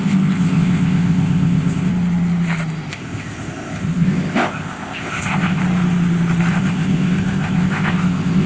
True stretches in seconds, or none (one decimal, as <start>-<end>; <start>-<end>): 1.9-2.9; 5.6-6.5